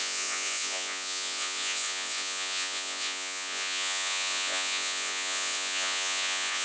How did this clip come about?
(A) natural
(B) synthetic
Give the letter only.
B